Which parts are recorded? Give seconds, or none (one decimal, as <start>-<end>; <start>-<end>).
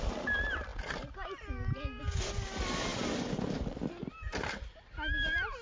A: 0.0-2.9; 4.7-5.6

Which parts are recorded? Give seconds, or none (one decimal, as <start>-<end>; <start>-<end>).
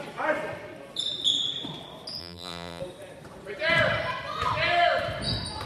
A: 0.0-2.2; 2.8-5.7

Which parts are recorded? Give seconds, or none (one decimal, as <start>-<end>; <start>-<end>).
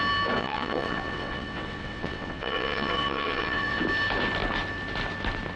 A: 0.0-0.4; 3.8-5.6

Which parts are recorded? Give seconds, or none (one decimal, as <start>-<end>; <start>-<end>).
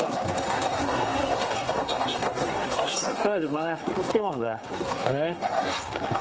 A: none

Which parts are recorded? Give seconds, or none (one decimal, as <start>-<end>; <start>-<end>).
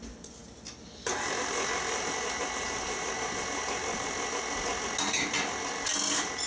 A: 0.0-6.5